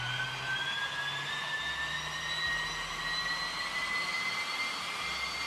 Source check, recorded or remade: recorded